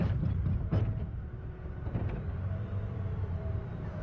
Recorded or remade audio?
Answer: remade